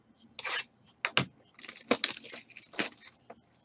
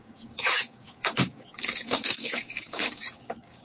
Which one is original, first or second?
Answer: first